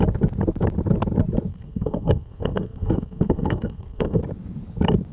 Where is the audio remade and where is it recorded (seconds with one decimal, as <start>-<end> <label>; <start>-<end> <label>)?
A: 0.0-1.5 recorded; 1.5-4.2 remade; 4.2-5.1 recorded